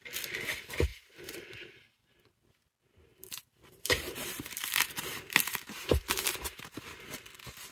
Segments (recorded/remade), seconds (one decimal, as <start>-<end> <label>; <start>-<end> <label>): 0.0-0.9 recorded; 0.9-1.9 remade; 1.9-3.1 recorded; 3.1-6.8 remade; 6.8-7.7 recorded